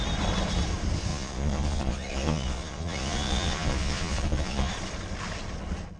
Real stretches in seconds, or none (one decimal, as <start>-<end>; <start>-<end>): 0.0-1.1; 4.7-6.0